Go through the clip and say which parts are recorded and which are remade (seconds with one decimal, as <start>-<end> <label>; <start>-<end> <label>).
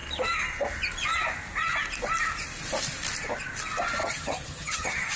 0.0-4.0 recorded; 4.0-5.2 remade